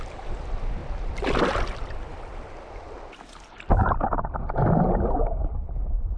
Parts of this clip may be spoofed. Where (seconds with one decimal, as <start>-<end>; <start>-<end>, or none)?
0.0-0.8; 1.4-2.1; 3.7-4.4